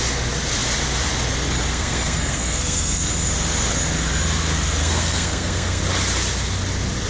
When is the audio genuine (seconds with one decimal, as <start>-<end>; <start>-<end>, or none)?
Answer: 0.0-1.7; 3.1-4.8; 5.8-7.1